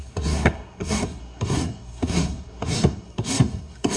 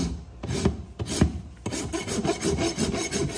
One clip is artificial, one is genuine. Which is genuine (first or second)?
second